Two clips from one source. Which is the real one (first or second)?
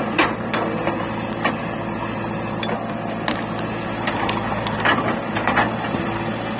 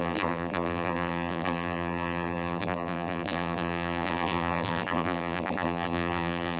first